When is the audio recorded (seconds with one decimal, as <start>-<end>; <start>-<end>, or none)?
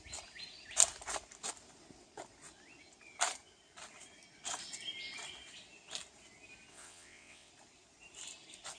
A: 0.0-6.7; 7.5-8.8